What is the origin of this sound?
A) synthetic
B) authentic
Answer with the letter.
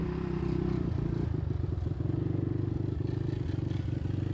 B